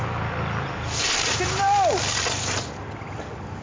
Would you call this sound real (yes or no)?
yes